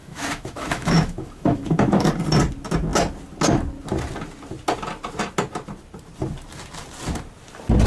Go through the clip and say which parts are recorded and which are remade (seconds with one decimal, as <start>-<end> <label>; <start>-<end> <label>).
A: 0.0-2.1 remade; 2.1-7.9 recorded